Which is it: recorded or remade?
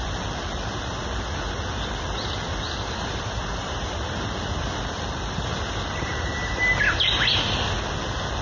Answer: recorded